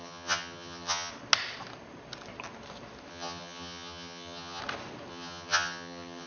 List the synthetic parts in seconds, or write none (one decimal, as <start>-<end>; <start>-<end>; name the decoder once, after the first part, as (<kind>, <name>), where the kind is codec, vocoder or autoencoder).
0.0-1.1 (vocoder, HiFi-GAN); 3.1-4.6; 5.1-6.3